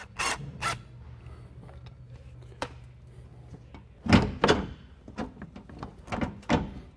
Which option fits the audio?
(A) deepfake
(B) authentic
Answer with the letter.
B